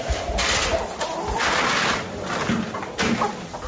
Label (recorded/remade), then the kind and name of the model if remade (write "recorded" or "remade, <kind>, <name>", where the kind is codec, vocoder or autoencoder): recorded